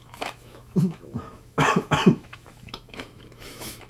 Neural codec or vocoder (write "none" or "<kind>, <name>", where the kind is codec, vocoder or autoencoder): autoencoder, DAC-VAE